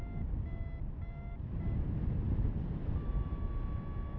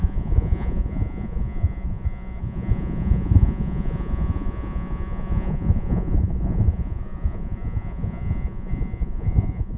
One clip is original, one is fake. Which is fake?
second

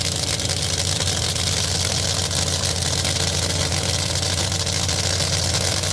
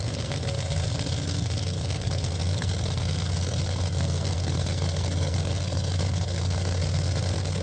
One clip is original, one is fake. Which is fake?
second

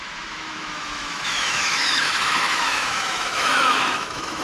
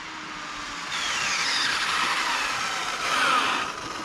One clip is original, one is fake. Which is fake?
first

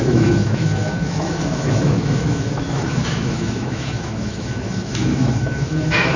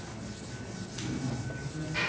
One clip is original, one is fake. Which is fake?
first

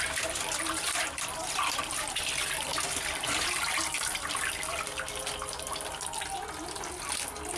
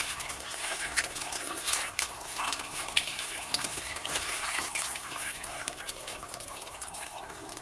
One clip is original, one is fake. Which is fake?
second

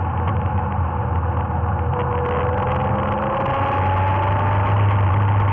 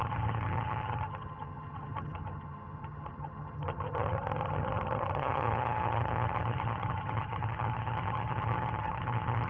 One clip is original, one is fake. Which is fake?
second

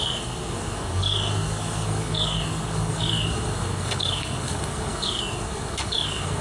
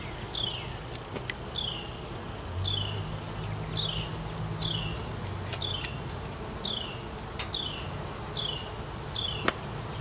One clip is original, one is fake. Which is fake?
first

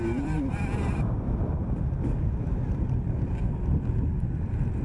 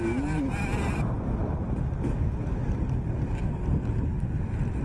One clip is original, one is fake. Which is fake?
first